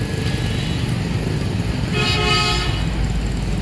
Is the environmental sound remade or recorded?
recorded